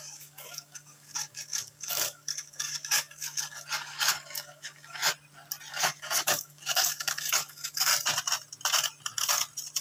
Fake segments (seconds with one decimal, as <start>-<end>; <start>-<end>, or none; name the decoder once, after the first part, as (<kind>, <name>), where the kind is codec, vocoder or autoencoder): 0.0-5.0 (codec, DAC); 5.7-7.9